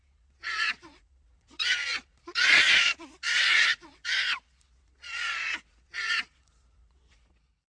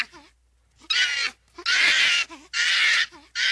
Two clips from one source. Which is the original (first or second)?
second